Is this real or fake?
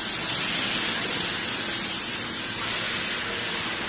real